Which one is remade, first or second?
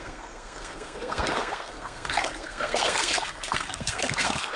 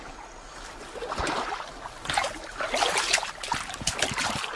first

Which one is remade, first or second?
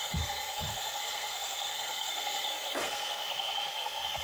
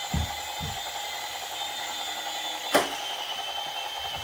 first